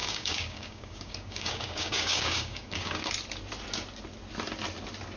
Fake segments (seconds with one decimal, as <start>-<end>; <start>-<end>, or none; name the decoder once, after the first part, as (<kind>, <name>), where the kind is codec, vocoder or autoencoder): 0.0-3.1 (codec, DAC)